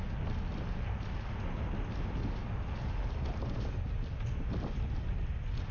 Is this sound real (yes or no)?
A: yes